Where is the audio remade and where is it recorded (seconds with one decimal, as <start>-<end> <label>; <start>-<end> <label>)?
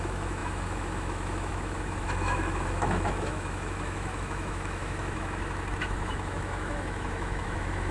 0.0-7.9 remade